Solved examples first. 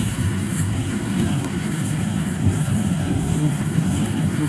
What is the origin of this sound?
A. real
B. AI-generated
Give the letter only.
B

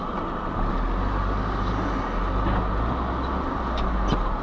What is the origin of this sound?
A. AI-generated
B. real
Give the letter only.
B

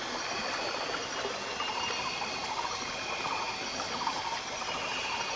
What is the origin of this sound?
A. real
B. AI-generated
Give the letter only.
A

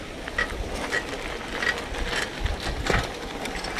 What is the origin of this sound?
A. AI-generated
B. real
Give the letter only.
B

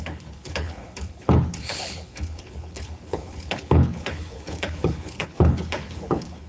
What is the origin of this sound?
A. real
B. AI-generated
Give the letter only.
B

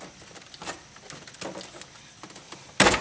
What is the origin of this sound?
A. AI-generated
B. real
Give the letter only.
B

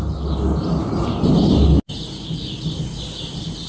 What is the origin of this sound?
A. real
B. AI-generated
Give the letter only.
A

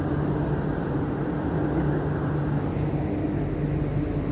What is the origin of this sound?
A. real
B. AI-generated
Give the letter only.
A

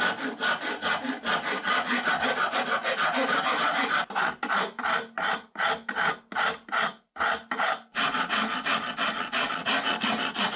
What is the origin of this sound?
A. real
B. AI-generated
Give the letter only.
A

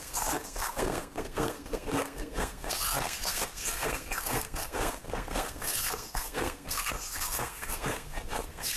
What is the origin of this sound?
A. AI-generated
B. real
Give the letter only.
A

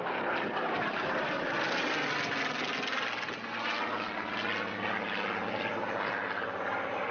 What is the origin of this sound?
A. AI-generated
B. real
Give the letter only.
B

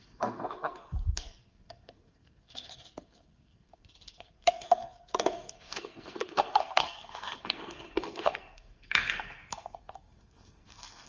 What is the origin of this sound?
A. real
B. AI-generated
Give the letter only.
B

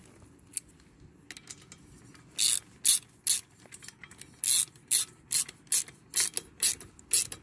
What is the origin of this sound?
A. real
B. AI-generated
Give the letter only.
A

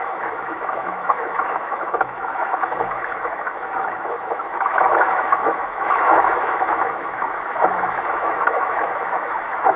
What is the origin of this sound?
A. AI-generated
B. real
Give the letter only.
A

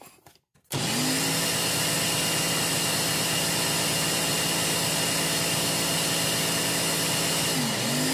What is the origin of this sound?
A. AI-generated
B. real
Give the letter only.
B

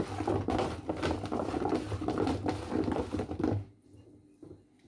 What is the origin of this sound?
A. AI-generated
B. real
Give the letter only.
B